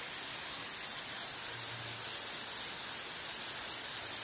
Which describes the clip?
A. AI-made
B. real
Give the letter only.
B